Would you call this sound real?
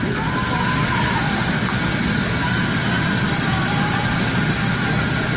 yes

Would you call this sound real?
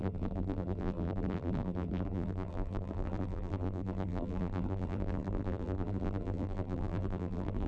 no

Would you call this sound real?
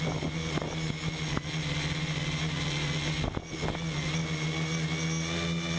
yes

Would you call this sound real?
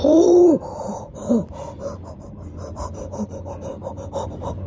no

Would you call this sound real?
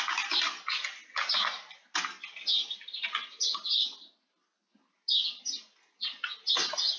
yes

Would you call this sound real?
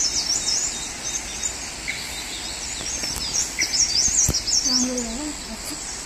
yes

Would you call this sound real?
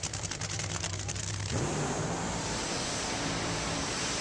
no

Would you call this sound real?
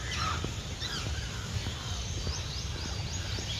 no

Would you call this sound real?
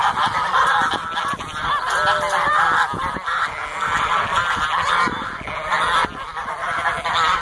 yes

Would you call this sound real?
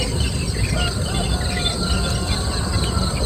yes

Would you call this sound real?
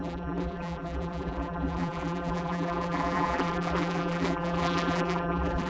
no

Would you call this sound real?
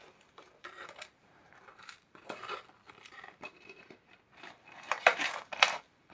no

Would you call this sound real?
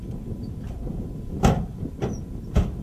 no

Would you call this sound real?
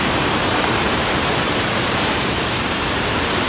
no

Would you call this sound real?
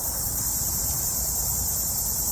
no